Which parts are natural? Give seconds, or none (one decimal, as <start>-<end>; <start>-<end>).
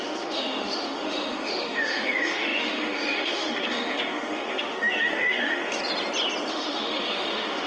5.8-6.5